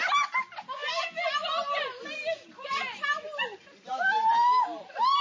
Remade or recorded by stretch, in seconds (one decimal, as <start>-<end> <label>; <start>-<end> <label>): 0.0-5.2 recorded